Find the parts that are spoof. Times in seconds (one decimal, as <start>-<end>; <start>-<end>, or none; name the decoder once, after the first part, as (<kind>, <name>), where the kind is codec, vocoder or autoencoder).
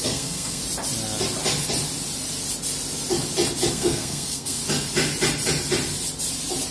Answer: 0.0-0.6 (codec, SNAC); 3.7-4.6